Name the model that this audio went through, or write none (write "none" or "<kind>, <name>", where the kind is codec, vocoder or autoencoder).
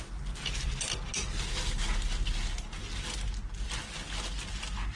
none